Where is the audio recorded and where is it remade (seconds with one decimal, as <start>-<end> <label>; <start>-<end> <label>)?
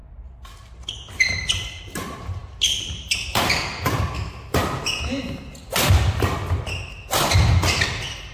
0.0-8.3 recorded